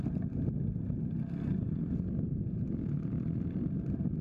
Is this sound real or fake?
real